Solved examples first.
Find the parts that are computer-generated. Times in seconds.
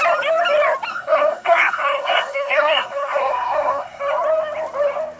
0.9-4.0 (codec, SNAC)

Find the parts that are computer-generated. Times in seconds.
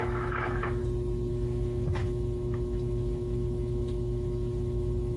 0.0-0.8 (autoencoder, DAC-VAE); 1.3-5.2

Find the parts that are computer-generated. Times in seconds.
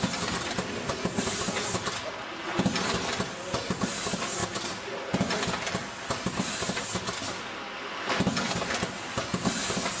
none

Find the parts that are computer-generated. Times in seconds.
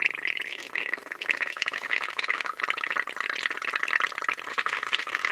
0.5-2.6 (autoencoder, DAC-VAE); 4.5-5.3